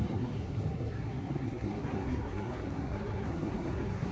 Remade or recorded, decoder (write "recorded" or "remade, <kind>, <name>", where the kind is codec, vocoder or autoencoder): remade, codec, SNAC